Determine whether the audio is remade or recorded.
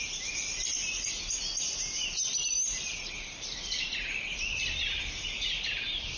recorded